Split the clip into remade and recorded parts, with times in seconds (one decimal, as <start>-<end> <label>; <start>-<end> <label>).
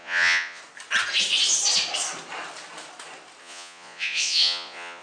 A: 0.0-0.6 remade; 0.6-3.4 recorded; 3.4-5.0 remade